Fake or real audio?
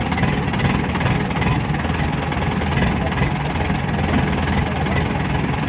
real